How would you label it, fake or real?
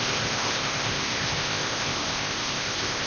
fake